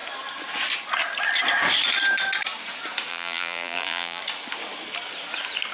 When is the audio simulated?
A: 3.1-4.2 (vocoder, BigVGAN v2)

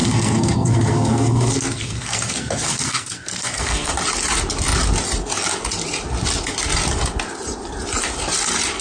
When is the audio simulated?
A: 0.0-3.9 (codec, SNAC)

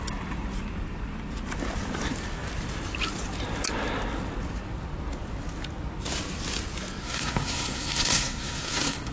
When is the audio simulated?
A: 7.0-9.1 (codec, SNAC)